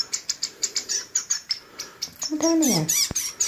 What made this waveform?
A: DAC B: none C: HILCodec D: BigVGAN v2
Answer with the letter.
D